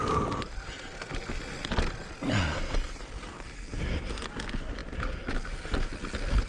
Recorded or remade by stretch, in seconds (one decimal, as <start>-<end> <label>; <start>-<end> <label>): 0.0-6.5 recorded